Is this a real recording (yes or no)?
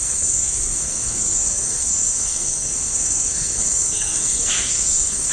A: no